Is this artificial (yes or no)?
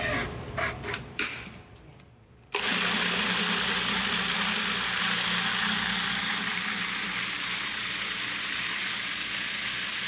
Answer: no